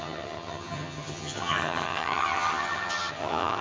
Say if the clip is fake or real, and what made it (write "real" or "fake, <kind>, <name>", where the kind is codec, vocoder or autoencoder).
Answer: fake, vocoder, HiFi-GAN